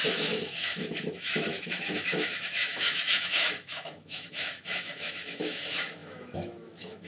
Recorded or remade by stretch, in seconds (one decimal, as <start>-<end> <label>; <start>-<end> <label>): 0.0-7.1 remade